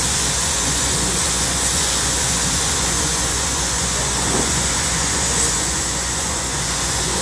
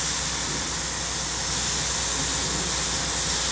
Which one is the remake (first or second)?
first